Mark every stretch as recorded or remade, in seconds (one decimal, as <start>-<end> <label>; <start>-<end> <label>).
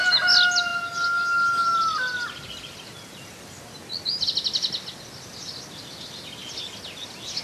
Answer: 0.0-7.4 recorded